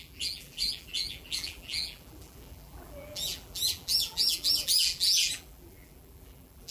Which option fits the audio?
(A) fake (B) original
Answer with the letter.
A